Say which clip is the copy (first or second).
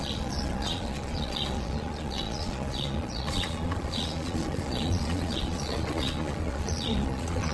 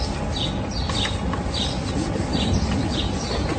first